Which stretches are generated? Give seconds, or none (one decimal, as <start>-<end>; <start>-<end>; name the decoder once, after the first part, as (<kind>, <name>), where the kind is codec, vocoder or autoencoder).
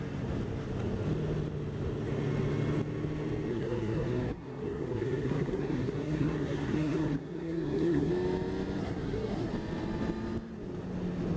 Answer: 3.5-8.1 (codec, SNAC); 8.8-9.5